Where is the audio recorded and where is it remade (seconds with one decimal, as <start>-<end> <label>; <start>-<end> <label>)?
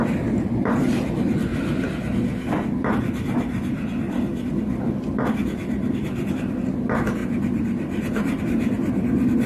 0.0-1.5 remade; 1.5-6.3 recorded; 6.3-9.5 remade